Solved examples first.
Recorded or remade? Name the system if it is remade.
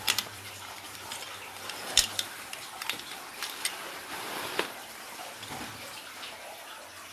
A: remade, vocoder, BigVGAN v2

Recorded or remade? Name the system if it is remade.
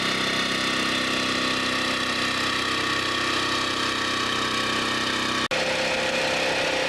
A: recorded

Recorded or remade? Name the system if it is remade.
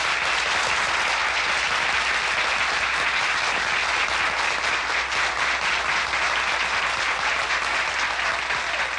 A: recorded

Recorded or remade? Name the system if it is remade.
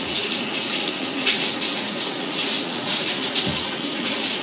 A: remade, vocoder, Vocos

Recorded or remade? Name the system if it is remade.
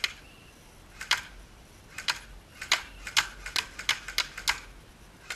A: recorded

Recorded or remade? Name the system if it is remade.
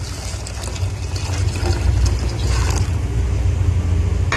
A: recorded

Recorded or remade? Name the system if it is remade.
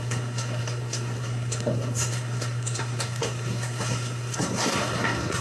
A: remade, codec, SNAC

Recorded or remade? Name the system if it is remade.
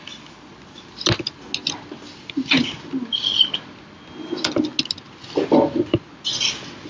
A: recorded